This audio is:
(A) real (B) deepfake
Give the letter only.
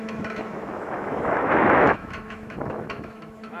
B